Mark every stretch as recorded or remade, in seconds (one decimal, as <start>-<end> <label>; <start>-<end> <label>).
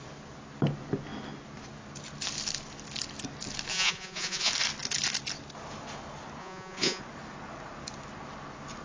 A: 0.0-3.7 recorded; 3.7-4.5 remade; 4.5-6.4 recorded; 6.4-7.0 remade; 7.0-8.8 recorded